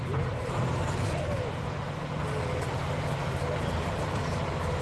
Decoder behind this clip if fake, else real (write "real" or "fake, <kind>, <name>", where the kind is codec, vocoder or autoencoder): real